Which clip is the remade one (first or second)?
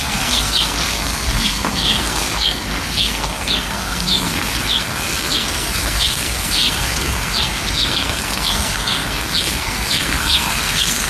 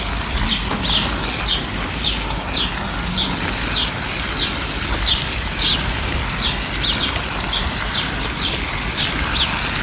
first